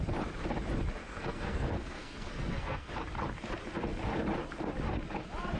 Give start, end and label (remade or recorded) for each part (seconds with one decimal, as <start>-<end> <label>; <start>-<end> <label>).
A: 0.0-1.0 recorded; 1.0-2.9 remade; 2.9-5.6 recorded